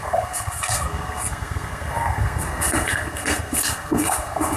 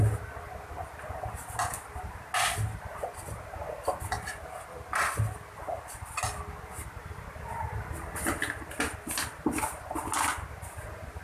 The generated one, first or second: first